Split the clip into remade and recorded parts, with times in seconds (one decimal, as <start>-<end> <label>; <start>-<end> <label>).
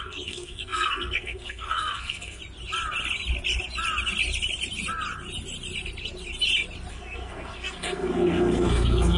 0.0-2.4 remade; 2.4-6.9 recorded; 6.9-9.2 remade